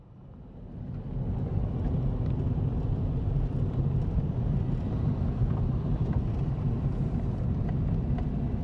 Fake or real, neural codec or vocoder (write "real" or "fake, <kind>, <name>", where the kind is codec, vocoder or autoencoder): fake, vocoder, BigVGAN v2